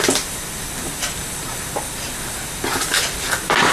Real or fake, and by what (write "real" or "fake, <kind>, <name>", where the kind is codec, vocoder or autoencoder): real